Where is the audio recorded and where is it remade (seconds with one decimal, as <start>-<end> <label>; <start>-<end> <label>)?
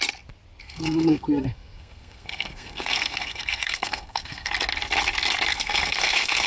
0.0-0.6 recorded; 0.6-4.5 remade; 4.5-5.5 recorded; 5.5-6.5 remade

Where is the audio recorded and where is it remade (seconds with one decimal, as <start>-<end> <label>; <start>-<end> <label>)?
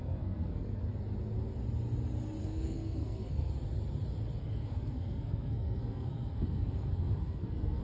0.0-0.8 remade; 0.8-2.4 recorded; 2.4-3.5 remade; 3.5-4.4 recorded; 4.4-7.8 remade